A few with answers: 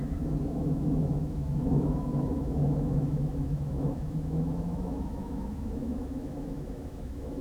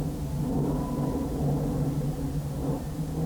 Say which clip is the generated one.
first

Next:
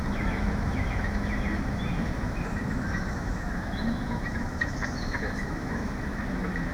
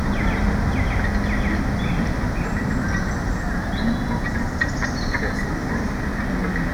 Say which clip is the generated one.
first